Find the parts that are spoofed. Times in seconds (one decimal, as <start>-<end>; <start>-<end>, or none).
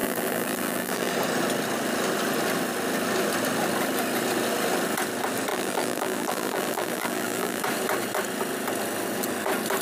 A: 0.0-1.1; 5.5-7.6